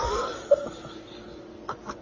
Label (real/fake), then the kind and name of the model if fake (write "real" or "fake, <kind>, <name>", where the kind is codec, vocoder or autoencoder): real